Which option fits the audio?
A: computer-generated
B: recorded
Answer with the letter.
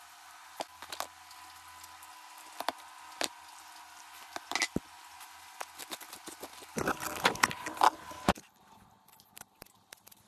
B